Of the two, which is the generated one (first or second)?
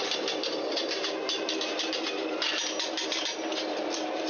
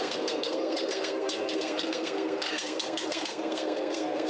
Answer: second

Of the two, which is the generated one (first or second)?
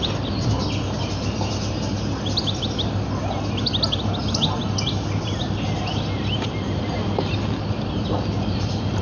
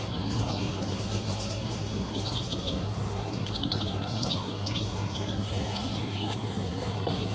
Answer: second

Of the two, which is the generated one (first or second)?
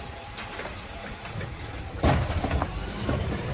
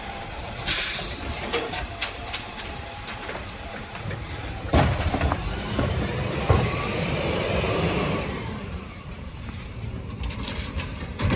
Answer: second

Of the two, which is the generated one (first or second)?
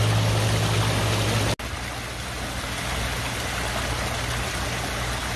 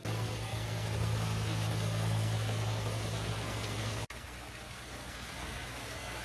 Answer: second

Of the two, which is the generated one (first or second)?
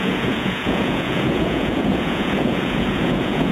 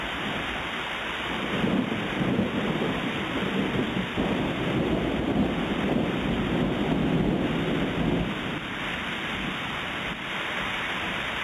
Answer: first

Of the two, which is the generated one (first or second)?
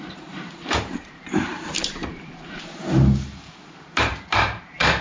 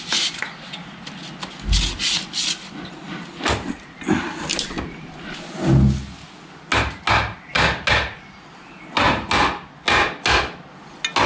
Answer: first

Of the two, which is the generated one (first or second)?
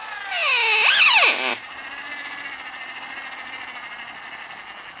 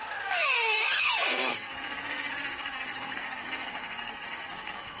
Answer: second